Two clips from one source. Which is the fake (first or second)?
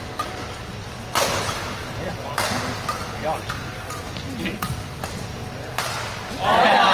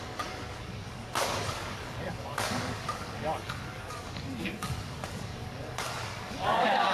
second